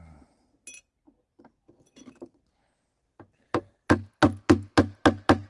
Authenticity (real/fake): real